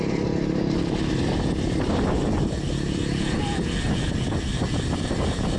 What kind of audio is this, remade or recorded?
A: remade